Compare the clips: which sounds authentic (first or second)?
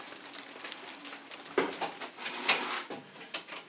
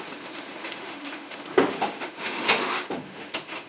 first